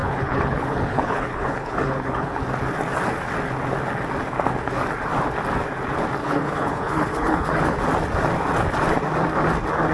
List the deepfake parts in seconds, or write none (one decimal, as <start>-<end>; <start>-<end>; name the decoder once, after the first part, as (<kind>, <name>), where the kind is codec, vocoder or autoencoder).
0.0-2.4 (codec, HILCodec); 6.2-7.8